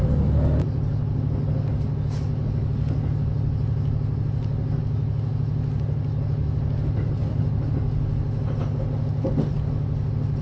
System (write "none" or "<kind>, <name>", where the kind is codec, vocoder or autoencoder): none